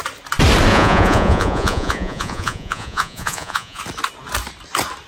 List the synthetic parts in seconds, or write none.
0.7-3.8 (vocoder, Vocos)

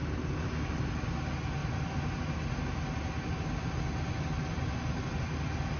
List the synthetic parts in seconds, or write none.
none

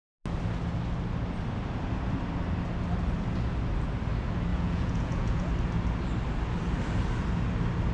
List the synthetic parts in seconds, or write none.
4.5-5.5 (vocoder, Vocos)

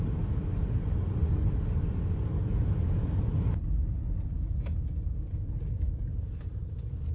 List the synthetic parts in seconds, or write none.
none

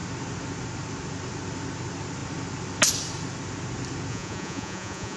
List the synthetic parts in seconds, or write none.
4.1-5.2 (vocoder, Vocos)

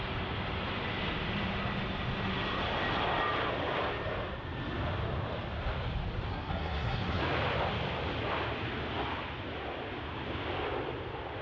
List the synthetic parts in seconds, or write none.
6.3-7.2 (codec, SNAC)